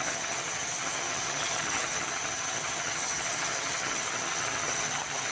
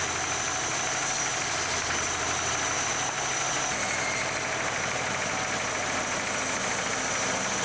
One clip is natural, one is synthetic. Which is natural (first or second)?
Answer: second